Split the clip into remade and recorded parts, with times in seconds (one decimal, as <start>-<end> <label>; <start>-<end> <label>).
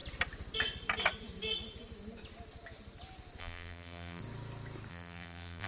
0.0-3.4 recorded; 3.4-4.2 remade; 4.2-4.9 recorded; 4.9-5.7 remade